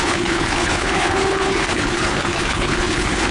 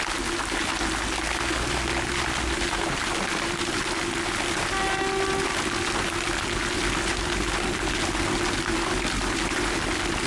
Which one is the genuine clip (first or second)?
second